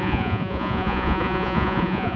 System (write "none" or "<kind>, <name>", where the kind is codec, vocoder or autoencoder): vocoder, Vocos